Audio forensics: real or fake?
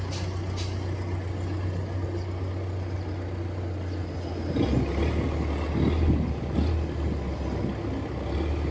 real